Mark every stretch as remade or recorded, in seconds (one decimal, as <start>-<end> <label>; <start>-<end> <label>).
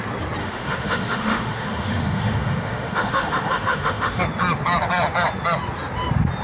0.0-0.4 recorded; 0.4-4.2 remade; 4.2-6.4 recorded